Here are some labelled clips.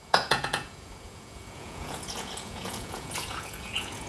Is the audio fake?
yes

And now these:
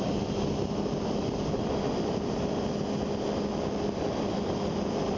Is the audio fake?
no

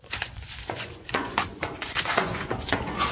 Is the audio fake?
yes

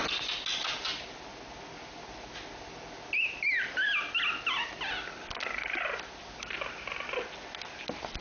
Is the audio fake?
no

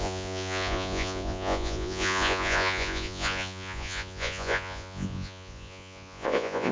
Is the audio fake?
yes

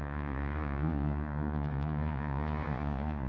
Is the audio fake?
yes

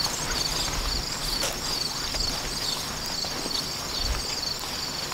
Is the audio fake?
no